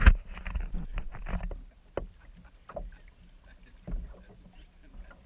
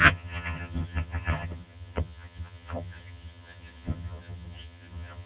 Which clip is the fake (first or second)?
second